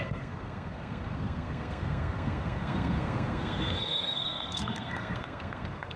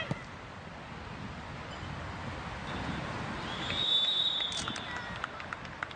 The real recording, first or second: second